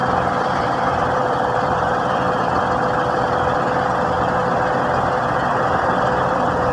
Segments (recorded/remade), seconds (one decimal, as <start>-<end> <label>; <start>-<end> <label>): 0.0-3.6 remade; 3.6-5.5 recorded; 5.5-6.7 remade

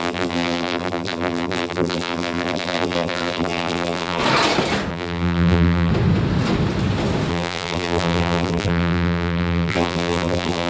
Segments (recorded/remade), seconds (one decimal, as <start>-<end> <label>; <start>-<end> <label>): 0.0-4.2 remade; 4.2-4.9 recorded; 4.9-5.9 remade; 5.9-7.3 recorded; 7.3-10.7 remade